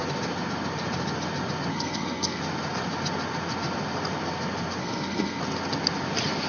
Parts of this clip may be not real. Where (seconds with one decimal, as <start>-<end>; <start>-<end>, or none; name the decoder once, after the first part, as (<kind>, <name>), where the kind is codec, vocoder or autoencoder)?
1.7-2.4 (codec, SNAC); 4.8-5.4